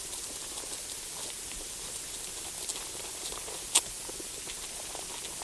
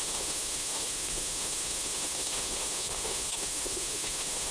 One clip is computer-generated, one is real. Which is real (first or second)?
first